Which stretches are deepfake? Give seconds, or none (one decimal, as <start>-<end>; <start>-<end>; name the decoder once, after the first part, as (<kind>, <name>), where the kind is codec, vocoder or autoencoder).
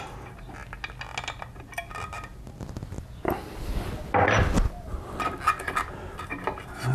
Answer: none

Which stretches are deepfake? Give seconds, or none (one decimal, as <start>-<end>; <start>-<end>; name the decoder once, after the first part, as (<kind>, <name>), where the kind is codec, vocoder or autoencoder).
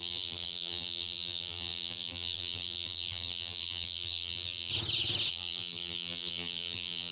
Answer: 0.0-4.7 (vocoder, BigVGAN v2); 5.3-7.1